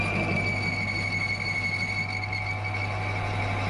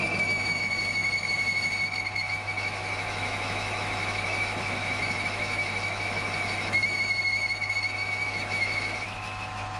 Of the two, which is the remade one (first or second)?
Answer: second